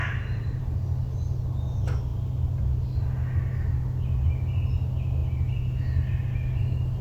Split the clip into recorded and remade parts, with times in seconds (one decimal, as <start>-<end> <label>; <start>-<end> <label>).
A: 0.0-0.6 remade; 0.6-7.0 recorded